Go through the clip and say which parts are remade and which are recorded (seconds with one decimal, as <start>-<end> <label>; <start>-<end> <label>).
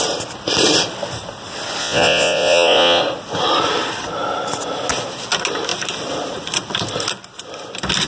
0.0-1.8 recorded; 1.8-3.0 remade; 3.0-8.1 recorded